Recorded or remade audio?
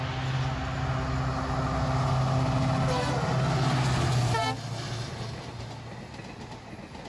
recorded